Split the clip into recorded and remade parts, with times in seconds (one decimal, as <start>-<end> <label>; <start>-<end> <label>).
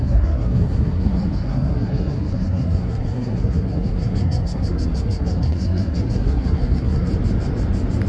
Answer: 0.0-7.1 remade; 7.1-8.1 recorded